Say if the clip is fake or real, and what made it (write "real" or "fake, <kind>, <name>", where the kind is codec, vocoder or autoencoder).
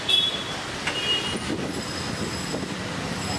real